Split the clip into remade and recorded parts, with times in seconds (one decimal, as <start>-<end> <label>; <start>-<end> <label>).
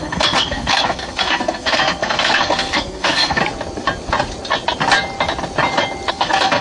0.0-3.4 remade; 3.4-6.1 recorded; 6.1-6.6 remade